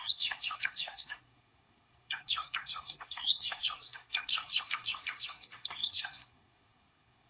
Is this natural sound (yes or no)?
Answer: no